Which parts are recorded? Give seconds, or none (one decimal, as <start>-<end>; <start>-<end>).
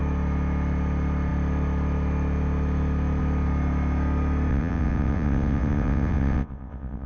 0.0-4.5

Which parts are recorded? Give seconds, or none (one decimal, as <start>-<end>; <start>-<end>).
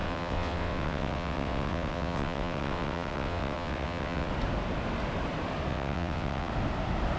4.3-5.7; 6.5-7.2